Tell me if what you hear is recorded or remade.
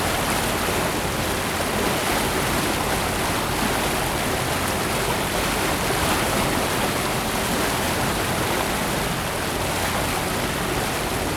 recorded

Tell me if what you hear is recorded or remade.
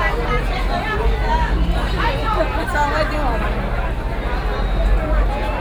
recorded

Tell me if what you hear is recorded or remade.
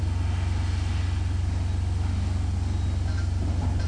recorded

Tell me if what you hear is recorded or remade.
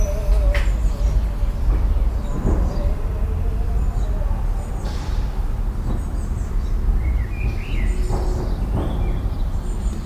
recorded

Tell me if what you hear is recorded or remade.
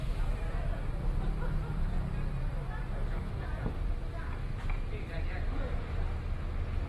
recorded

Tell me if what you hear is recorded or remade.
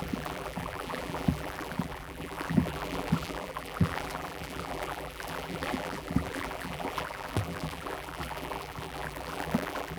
remade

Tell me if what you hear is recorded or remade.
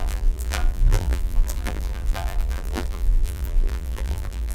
remade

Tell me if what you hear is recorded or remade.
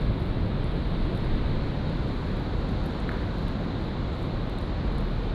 recorded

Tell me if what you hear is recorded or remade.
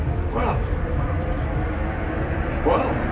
remade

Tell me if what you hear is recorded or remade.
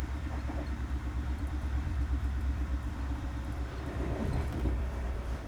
remade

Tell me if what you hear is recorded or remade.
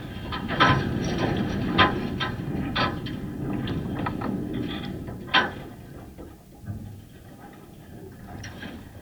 recorded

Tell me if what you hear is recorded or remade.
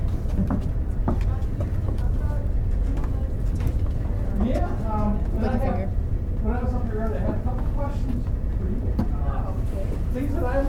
recorded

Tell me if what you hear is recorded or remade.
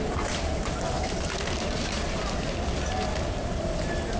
recorded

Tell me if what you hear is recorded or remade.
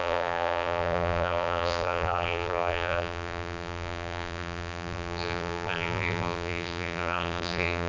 remade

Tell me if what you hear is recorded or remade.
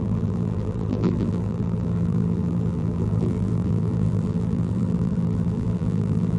remade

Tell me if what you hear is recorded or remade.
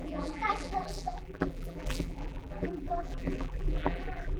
remade